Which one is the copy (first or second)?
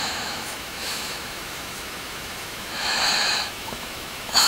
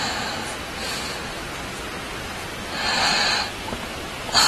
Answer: first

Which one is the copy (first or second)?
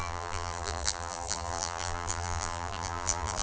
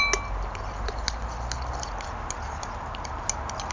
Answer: first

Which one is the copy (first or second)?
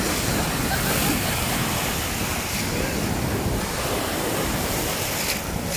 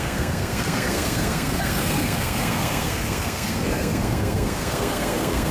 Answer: second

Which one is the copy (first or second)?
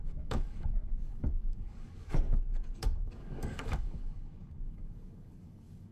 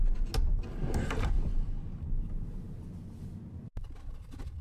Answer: first